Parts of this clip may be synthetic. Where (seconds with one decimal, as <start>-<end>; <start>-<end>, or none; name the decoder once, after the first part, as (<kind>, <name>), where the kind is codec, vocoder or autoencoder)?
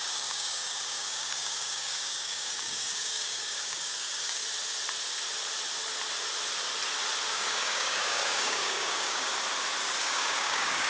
0.0-4.4 (codec, DAC); 7.3-9.3; 10.0-10.9